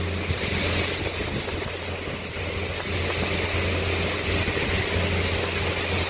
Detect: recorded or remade recorded